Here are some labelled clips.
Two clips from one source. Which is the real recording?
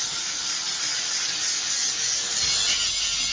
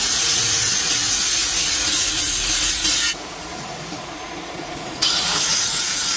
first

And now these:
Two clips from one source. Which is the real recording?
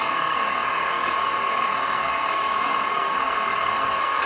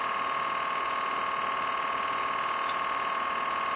second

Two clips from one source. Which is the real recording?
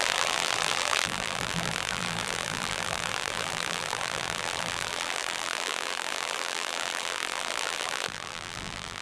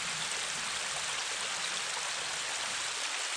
second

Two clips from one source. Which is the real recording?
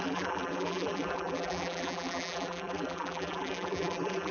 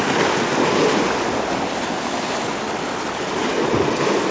second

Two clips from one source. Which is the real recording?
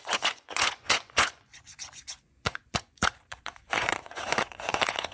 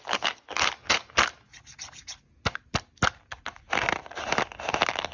second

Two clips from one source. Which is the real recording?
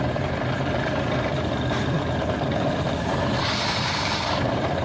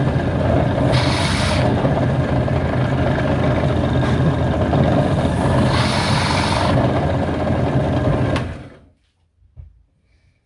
second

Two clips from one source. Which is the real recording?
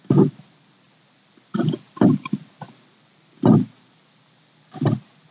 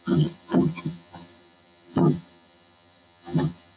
first